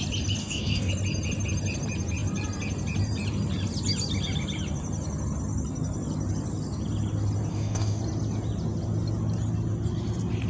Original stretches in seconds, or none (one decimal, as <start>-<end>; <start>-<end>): 0.0-0.4; 0.9-7.5; 8.0-10.5